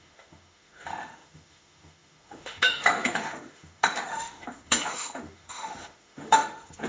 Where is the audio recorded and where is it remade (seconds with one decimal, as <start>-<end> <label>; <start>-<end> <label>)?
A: 0.0-6.9 remade